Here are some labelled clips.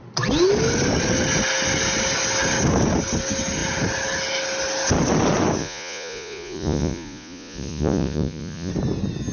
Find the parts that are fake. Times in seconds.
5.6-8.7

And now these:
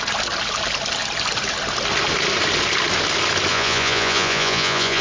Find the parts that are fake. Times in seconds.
3.5-5.0

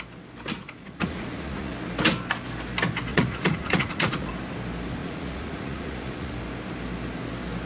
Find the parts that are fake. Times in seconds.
0.8-1.7; 3.1-4.3; 5.0-6.3

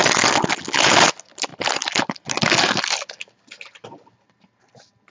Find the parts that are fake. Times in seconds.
none

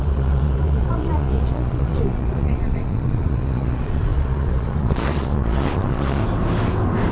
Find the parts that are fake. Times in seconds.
0.0-6.2